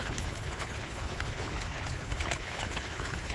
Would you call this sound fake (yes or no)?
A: yes